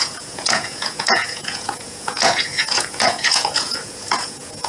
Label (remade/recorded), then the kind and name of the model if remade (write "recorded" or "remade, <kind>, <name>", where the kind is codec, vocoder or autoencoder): remade, vocoder, Vocos